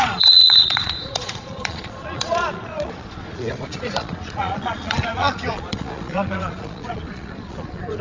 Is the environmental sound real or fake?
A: fake